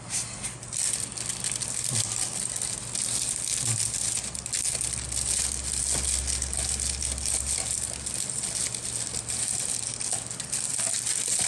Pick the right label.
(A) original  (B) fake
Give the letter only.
A